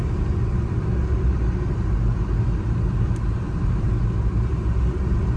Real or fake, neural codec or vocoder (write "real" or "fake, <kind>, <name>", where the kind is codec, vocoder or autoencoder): fake, vocoder, BigVGAN v2